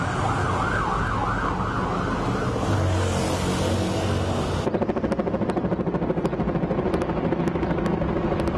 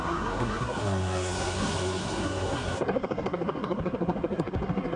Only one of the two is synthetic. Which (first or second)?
second